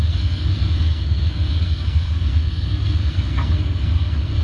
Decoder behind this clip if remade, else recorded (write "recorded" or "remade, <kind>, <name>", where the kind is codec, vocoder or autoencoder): remade, codec, SNAC